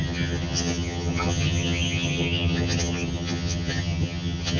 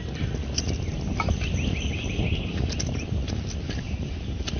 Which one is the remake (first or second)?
first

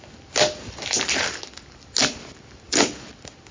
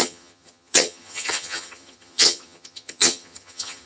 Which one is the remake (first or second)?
second